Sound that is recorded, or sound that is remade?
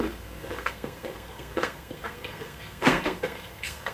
remade